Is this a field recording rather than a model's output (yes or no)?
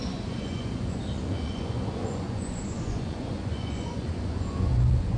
no